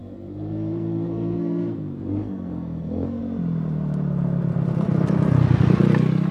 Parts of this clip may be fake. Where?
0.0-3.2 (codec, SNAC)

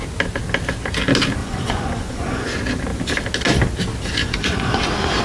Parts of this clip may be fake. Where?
1.4-2.5 (vocoder, Vocos); 4.2-4.8